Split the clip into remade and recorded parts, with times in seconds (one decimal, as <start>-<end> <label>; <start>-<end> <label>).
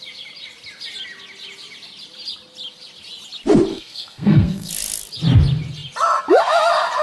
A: 0.0-3.7 recorded; 3.7-4.7 remade; 4.7-7.0 recorded